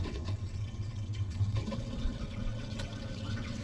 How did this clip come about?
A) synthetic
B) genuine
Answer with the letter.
A